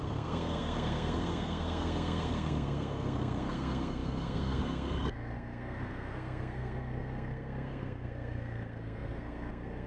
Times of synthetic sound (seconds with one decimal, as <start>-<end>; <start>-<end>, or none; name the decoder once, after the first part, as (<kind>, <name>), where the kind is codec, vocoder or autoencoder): 0.0-9.9 (codec, SNAC)